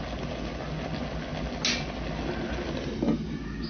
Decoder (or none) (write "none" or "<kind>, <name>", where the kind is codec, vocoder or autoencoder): none